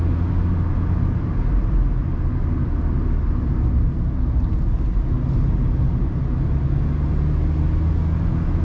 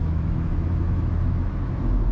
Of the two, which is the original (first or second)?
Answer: first